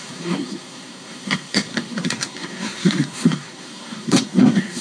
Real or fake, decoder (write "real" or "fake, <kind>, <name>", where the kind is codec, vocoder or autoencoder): fake, codec, SNAC